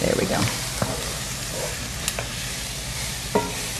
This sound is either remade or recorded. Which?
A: remade